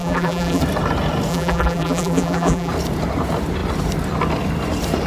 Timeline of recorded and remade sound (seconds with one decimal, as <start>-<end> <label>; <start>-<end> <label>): 0.0-0.6 remade; 0.6-1.3 recorded; 1.3-2.7 remade; 2.7-5.1 recorded